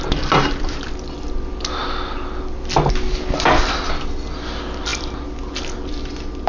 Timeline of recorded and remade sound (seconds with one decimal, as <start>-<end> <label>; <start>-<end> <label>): 0.0-6.5 recorded